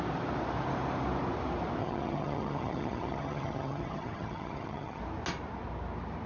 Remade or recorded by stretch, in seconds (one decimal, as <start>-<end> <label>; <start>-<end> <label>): 0.0-1.8 recorded; 1.8-5.0 remade; 5.0-6.3 recorded